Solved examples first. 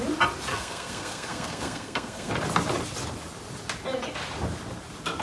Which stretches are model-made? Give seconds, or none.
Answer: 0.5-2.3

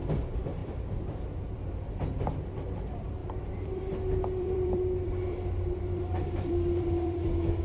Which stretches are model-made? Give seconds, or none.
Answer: 0.6-1.2; 3.2-7.6

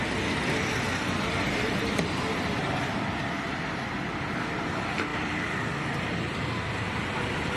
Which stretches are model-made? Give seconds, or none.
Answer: none